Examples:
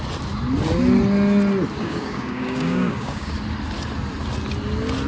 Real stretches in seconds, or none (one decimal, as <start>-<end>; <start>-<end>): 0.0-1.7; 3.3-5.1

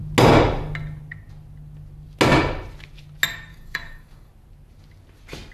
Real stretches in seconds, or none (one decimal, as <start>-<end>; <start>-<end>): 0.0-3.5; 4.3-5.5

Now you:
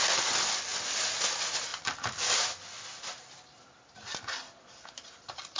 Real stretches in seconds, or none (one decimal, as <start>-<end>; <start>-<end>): 0.0-5.6

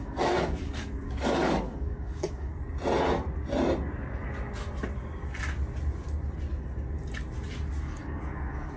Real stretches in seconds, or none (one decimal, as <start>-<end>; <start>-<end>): 2.5-7.7

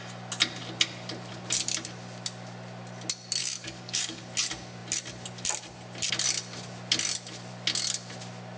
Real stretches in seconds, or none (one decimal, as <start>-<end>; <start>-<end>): 0.0-3.4; 4.2-8.6

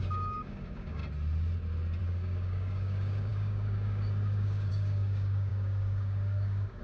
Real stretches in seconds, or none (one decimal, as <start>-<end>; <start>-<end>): 1.0-2.0